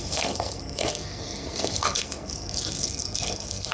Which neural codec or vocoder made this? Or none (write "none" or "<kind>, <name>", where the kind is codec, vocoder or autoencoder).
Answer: codec, SNAC